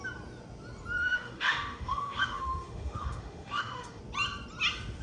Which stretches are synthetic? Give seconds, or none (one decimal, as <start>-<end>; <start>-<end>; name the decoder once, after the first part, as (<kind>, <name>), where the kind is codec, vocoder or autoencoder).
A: 1.0-4.0 (autoencoder, DAC-VAE)